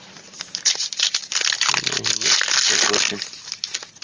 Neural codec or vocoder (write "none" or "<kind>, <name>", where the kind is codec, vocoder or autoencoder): none